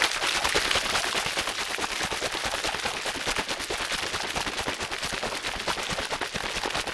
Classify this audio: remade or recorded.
recorded